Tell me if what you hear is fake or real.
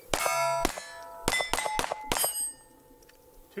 real